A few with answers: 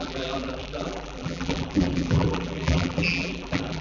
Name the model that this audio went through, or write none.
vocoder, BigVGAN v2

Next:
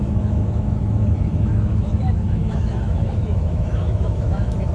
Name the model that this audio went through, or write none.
autoencoder, DAC-VAE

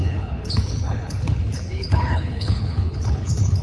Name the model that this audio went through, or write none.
codec, HILCodec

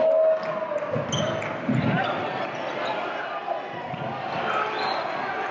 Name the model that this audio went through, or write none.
none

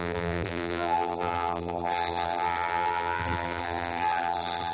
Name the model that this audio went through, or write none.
vocoder, BigVGAN v2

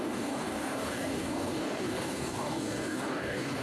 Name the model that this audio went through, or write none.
codec, DAC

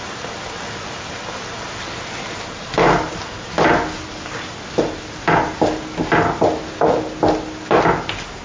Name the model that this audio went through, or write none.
none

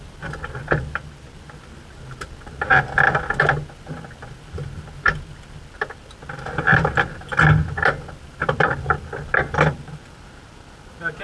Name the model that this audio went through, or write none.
none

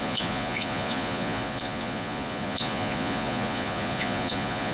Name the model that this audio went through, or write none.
vocoder, Vocos